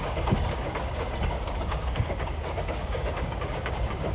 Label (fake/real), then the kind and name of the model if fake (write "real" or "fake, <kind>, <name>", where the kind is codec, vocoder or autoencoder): fake, codec, DAC